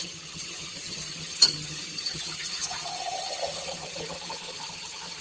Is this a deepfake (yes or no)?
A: yes